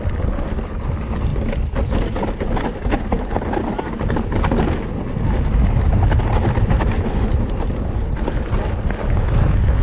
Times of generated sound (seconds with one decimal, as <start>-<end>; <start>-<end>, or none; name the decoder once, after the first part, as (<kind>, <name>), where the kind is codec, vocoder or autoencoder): none

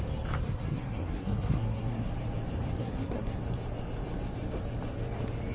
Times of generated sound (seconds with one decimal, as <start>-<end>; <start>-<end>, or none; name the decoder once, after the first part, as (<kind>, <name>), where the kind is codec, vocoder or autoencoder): 0.4-2.1 (codec, SNAC); 2.8-3.4

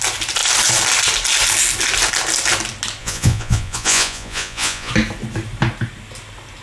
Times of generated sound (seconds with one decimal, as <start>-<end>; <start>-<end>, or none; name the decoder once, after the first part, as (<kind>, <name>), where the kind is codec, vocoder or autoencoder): 3.0-4.9 (vocoder, Vocos)

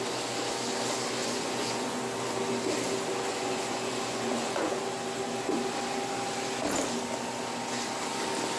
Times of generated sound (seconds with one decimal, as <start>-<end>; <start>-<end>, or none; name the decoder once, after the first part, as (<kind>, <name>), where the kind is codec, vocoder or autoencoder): 1.2-2.0 (vocoder, Vocos); 3.3-4.8

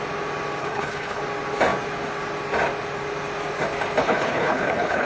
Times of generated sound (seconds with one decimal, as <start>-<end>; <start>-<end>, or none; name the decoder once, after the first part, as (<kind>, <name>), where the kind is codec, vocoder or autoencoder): 0.6-1.2 (codec, HILCodec); 4.0-5.1

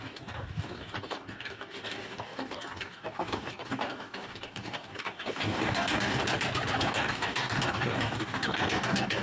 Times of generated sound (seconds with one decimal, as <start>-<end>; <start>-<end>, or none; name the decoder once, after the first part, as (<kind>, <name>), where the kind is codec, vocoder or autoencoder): 0.0-6.2 (codec, DAC); 6.8-9.2

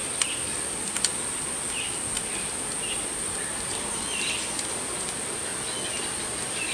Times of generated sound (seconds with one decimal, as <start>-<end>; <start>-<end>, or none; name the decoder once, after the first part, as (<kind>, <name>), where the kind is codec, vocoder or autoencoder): none

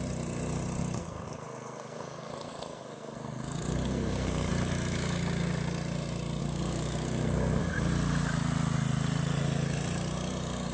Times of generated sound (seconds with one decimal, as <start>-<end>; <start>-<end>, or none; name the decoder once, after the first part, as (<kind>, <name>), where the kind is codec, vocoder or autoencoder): 0.8-4.5 (codec, SNAC); 6.4-7.6